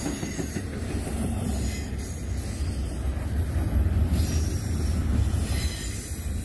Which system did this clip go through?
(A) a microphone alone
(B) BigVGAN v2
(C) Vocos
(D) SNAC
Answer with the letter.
A